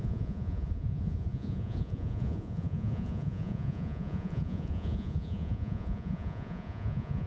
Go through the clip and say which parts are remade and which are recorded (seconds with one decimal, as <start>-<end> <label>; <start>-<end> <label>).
0.0-7.3 remade